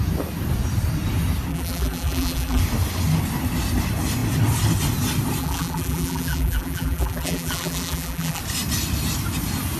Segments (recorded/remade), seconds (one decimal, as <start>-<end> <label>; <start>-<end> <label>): 0.0-1.5 recorded; 1.5-2.6 remade; 2.6-5.4 recorded; 5.4-8.4 remade; 8.4-9.8 recorded